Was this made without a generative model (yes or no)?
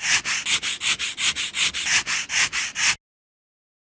yes